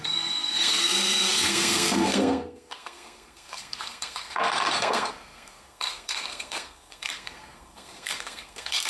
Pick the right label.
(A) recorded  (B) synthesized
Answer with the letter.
B